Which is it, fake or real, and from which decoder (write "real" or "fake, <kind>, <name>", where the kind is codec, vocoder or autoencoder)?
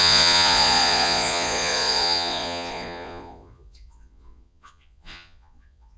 fake, vocoder, Vocos